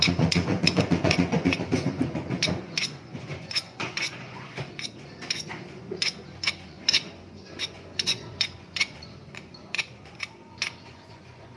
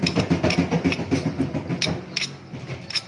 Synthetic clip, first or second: first